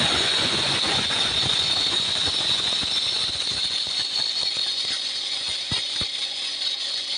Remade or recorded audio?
remade